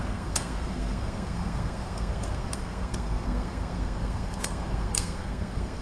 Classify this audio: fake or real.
fake